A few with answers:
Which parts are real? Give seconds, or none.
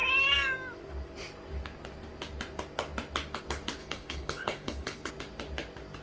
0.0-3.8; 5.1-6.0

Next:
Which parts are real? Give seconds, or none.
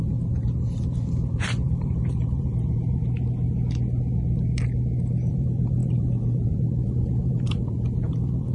3.0-5.3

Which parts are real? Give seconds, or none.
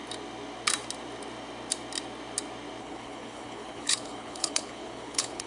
0.0-2.8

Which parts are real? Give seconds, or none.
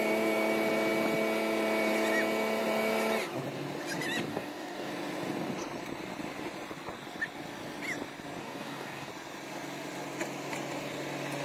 0.0-4.3; 4.9-8.4; 9.1-11.4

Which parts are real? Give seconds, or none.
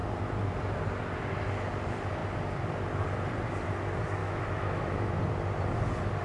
0.0-4.2; 5.2-6.2